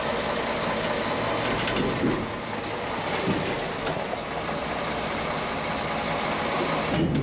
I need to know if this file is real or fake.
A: real